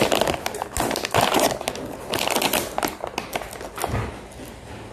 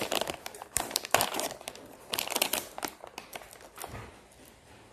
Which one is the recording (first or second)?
first